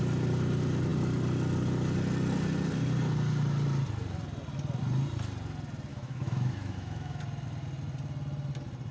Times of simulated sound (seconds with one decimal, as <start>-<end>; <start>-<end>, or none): 5.9-7.2